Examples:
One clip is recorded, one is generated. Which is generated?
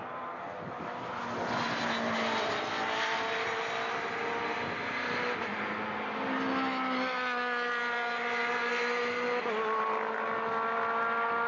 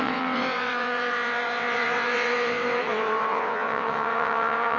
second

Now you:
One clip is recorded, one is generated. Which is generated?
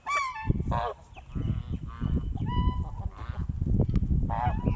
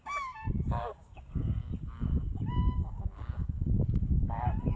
second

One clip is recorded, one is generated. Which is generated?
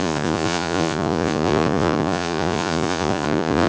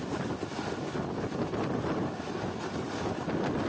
first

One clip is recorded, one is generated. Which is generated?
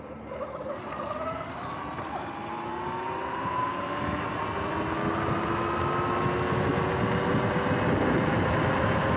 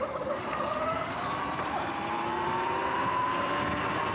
second